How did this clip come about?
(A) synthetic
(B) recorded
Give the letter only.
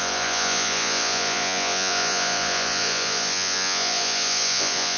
A